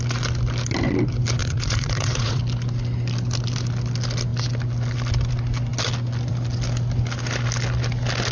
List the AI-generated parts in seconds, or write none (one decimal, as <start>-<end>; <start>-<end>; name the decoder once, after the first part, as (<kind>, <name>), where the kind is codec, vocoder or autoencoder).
1.4-2.4 (vocoder, Vocos)